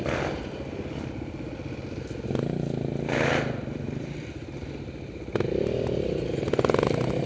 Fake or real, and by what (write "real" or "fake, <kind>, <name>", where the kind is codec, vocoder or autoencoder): real